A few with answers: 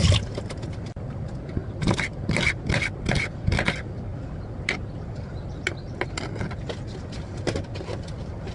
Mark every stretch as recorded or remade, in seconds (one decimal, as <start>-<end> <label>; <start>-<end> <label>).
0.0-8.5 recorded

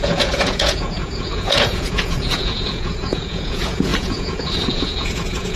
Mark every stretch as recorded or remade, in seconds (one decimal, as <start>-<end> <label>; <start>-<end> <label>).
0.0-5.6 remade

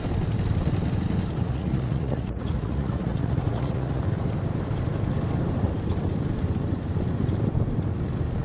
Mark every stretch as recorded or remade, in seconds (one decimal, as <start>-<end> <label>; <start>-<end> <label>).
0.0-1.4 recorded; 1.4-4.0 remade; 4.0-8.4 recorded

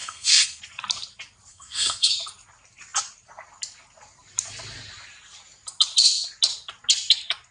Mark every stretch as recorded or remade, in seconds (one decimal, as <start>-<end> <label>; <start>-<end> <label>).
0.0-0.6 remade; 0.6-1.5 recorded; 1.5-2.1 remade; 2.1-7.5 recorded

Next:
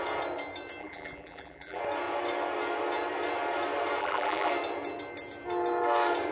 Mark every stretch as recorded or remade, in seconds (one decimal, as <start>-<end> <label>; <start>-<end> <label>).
0.0-0.8 recorded; 0.8-1.8 remade; 1.8-4.0 recorded; 4.0-4.5 remade; 4.5-6.3 recorded